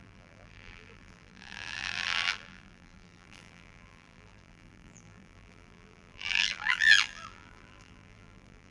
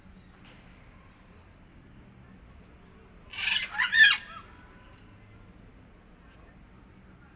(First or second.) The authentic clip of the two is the second